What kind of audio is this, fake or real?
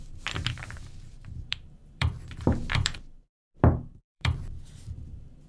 fake